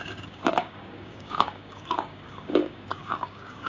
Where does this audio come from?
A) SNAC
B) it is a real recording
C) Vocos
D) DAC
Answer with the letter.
D